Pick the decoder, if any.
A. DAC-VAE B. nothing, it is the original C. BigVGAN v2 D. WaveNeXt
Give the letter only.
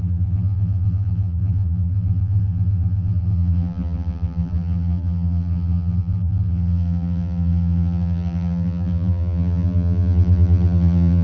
C